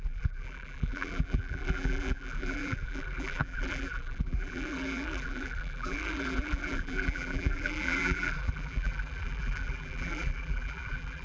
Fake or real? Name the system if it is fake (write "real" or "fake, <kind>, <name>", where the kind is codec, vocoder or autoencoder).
fake, vocoder, BigVGAN v2